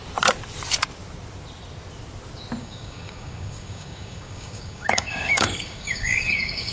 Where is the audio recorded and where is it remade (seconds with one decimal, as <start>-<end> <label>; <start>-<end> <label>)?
0.0-2.6 recorded; 2.6-6.7 remade